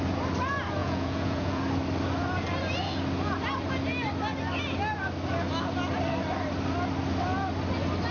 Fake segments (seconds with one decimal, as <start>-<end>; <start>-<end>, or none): 0.8-1.6